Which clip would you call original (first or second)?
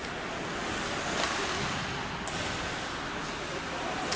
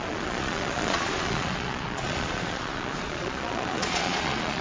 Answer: first